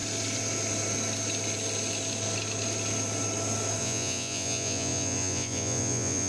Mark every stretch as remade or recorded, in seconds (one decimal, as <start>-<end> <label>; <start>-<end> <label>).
0.0-3.8 recorded; 3.8-6.3 remade